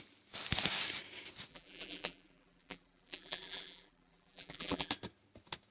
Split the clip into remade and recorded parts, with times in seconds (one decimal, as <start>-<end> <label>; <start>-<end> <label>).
0.0-1.5 recorded; 1.5-4.9 remade; 4.9-5.7 recorded